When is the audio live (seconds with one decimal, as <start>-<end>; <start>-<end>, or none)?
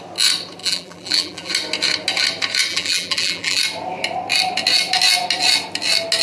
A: 0.0-0.6; 1.5-2.7; 3.6-6.2